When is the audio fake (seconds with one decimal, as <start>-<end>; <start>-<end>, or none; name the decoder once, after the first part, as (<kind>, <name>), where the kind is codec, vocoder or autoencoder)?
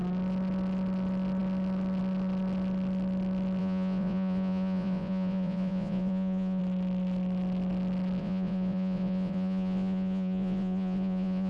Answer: 3.6-6.6 (vocoder, Vocos); 8.2-11.5